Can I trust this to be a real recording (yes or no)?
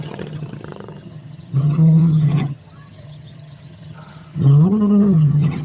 no